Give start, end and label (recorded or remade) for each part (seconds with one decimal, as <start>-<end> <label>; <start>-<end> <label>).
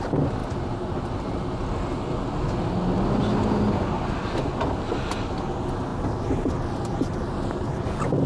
0.0-8.3 recorded